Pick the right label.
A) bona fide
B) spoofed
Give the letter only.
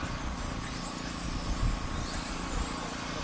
A